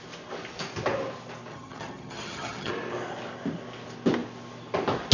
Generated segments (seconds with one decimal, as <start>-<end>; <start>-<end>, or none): 1.5-2.7